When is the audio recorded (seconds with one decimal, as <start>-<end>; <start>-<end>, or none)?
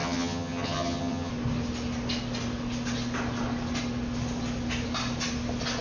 1.3-5.8